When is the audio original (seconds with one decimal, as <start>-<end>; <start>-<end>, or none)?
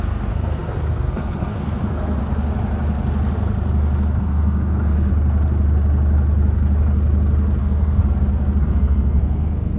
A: 2.2-4.2; 5.1-7.6; 8.0-8.6